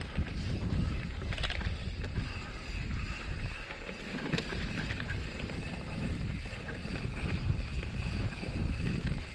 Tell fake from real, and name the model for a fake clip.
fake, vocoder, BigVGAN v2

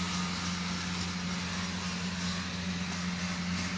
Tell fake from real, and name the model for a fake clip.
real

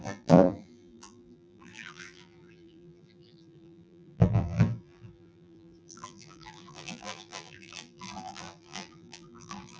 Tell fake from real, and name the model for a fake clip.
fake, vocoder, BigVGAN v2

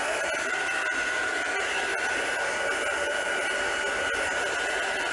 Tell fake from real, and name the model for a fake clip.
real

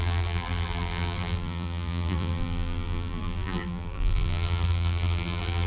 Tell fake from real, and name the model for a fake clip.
fake, vocoder, BigVGAN v2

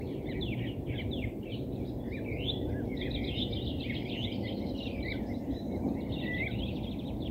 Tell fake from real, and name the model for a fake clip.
fake, vocoder, BigVGAN v2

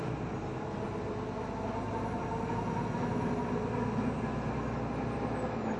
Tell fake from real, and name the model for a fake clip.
real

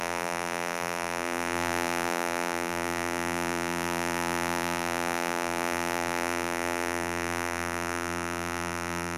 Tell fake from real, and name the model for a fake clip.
fake, vocoder, BigVGAN v2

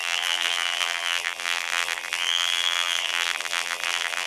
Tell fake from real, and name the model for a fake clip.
fake, vocoder, BigVGAN v2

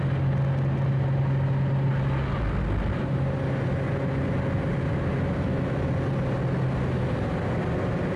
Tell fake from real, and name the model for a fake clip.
real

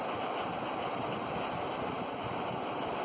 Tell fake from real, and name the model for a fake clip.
real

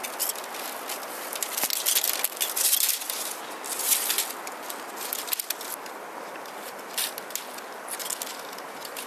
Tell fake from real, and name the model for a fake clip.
real